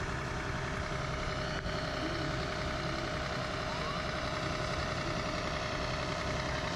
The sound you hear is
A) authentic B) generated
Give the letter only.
A